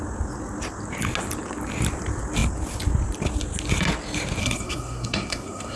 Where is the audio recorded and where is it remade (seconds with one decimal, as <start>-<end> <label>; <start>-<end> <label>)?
0.0-4.4 recorded; 4.4-5.8 remade